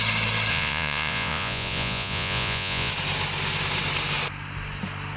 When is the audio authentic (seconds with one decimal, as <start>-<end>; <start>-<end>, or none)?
0.0-0.5; 2.9-5.2